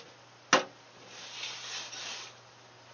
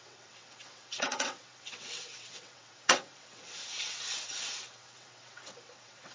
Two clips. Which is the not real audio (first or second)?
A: second